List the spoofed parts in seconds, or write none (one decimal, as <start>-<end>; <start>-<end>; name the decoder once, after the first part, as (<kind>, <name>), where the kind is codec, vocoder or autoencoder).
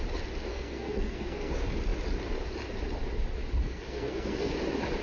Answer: 0.5-1.5 (codec, SNAC); 3.6-4.5